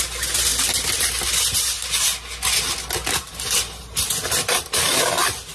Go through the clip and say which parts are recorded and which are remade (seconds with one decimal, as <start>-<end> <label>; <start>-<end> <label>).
0.0-5.5 recorded